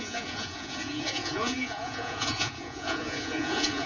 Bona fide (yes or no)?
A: no